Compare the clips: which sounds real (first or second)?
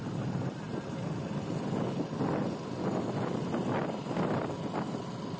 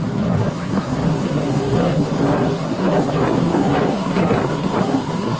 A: first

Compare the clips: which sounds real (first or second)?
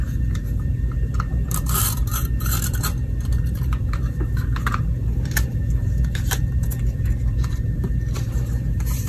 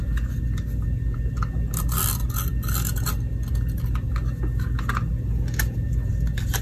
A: second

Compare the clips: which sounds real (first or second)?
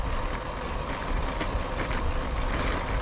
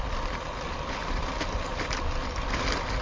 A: first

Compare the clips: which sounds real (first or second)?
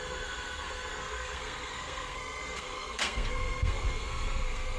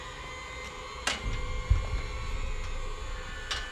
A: second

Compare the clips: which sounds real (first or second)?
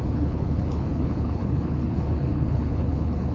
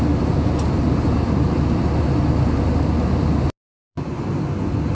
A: second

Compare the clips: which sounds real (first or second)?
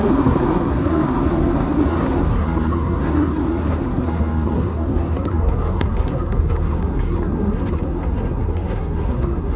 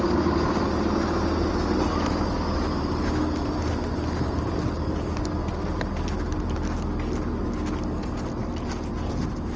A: second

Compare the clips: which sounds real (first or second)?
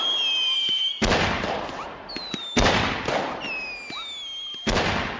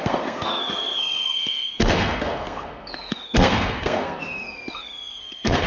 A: first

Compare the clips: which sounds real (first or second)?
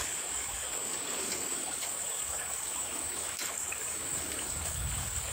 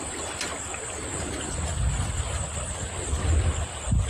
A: second